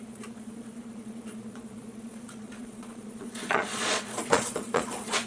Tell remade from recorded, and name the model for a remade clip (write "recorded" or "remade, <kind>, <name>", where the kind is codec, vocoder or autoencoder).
remade, vocoder, Vocos